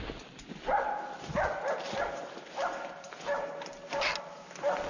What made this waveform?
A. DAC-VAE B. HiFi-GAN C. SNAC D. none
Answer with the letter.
D